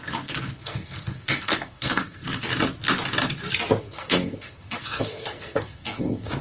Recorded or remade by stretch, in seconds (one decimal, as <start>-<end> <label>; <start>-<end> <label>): 0.0-2.5 remade; 2.5-3.8 recorded; 3.8-6.4 remade